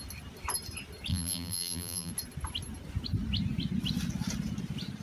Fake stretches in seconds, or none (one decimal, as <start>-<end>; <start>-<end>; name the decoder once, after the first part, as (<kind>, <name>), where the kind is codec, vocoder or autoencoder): 1.1-2.1 (vocoder, BigVGAN v2)